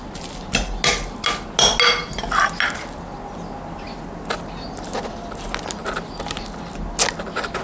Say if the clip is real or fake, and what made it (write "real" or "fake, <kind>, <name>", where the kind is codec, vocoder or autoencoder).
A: real